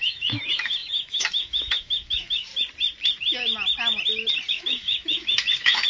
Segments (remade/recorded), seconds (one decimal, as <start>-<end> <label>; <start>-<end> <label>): 0.0-2.5 remade; 2.5-4.5 recorded; 4.5-5.9 remade